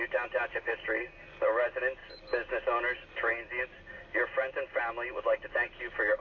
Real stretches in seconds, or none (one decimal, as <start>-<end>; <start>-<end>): 0.0-6.2